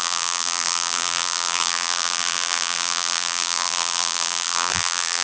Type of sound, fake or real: fake